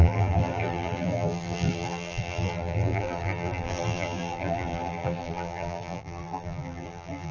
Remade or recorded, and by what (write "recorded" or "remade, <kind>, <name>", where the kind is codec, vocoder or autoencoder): remade, vocoder, BigVGAN v2